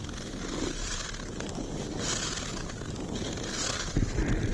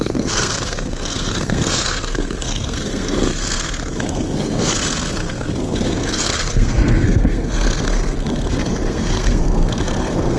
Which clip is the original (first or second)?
first